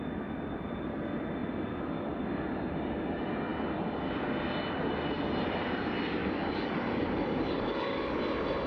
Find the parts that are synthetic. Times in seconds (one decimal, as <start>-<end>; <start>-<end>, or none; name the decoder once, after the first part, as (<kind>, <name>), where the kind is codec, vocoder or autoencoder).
6.2-8.2 (codec, DAC)